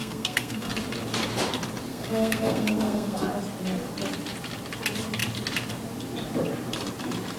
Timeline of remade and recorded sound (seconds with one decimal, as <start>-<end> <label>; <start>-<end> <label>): 0.0-0.7 remade; 0.7-1.9 recorded; 1.9-3.3 remade; 3.3-7.4 recorded